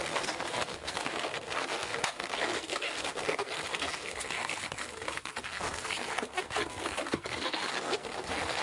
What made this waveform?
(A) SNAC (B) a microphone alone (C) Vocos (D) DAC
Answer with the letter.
A